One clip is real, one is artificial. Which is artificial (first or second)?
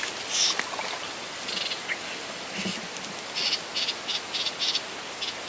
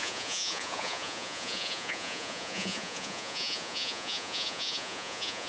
second